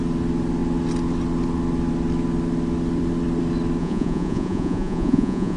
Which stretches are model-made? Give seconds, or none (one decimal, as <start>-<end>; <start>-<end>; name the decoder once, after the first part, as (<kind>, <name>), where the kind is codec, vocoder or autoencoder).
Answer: 3.8-5.6 (vocoder, Vocos)